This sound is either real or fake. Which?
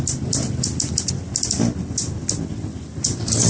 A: fake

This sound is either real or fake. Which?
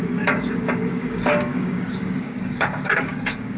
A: fake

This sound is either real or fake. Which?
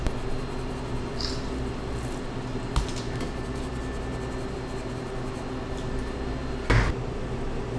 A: real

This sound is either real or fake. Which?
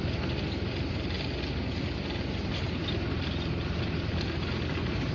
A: real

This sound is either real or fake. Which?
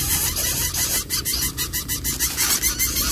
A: real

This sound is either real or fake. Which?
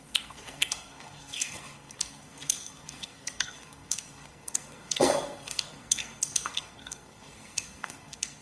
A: fake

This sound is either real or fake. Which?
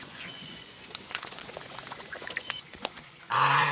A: fake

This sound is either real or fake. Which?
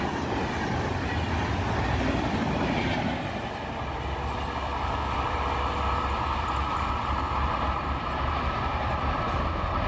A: fake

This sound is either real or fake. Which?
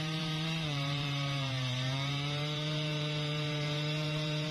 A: fake